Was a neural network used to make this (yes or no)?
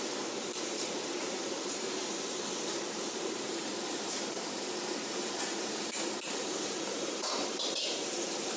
yes